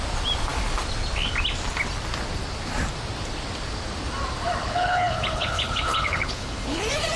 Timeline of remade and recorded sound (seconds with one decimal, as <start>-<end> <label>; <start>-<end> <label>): 0.0-4.6 recorded; 4.6-6.8 remade; 6.8-7.2 recorded